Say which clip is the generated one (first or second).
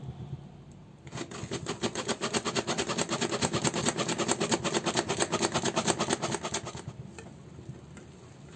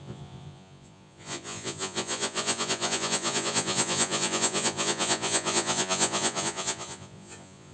second